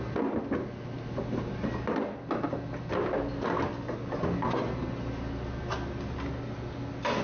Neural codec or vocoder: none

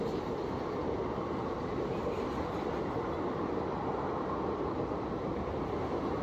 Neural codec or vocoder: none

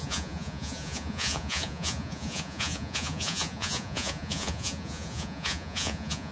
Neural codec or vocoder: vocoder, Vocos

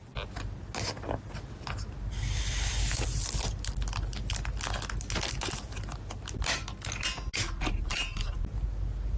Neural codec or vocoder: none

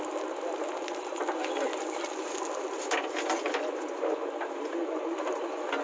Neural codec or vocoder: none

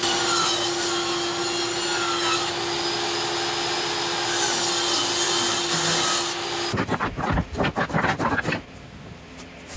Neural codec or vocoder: none